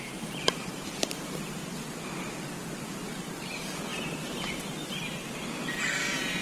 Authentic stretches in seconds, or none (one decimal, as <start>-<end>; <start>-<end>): 1.6-2.8; 3.9-5.3